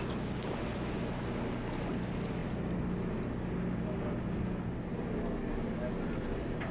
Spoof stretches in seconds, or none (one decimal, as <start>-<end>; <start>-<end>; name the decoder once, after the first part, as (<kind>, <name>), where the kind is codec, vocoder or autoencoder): none